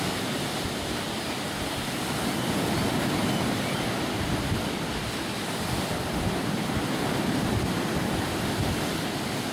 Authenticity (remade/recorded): recorded